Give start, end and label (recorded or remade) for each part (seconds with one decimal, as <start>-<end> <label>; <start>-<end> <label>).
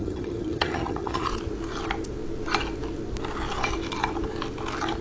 0.0-1.3 remade; 1.3-5.0 recorded